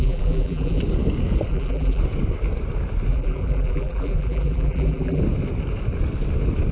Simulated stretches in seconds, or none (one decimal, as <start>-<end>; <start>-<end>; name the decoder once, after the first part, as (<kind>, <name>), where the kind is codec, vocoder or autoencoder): 0.0-0.8 (vocoder, BigVGAN v2); 1.5-2.0; 3.1-5.2